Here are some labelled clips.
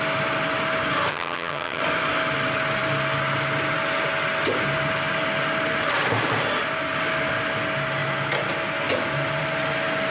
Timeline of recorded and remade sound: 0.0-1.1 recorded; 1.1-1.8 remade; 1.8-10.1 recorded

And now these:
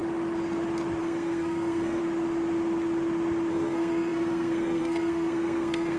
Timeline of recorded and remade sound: 0.0-1.0 recorded; 1.0-2.0 remade; 2.0-3.5 recorded; 3.5-6.0 remade

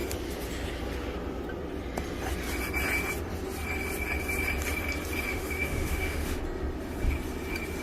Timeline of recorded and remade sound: 0.0-5.3 recorded; 5.3-6.4 remade; 6.4-7.8 recorded

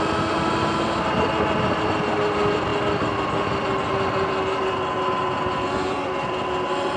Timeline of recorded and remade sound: 0.0-7.0 recorded

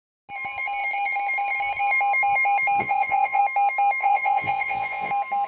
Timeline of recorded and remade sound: 0.0-2.8 recorded; 2.8-3.4 remade; 3.4-4.0 recorded; 4.0-5.1 remade; 5.1-5.5 recorded

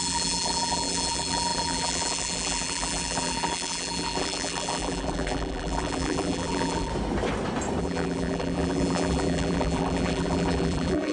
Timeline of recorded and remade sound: 0.0-6.9 remade; 6.9-7.8 recorded; 7.8-11.1 remade

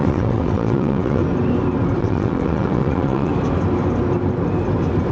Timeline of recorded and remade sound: 0.0-1.2 remade; 1.2-2.0 recorded; 2.0-3.3 remade; 3.3-5.1 recorded